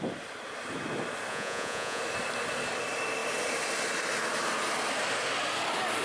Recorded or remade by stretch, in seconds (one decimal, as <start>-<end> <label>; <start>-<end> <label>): 0.0-1.3 recorded; 1.3-2.0 remade; 2.0-6.0 recorded